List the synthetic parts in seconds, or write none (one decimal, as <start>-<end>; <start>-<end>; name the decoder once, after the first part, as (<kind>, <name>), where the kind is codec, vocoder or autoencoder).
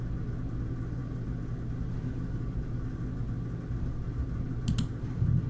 none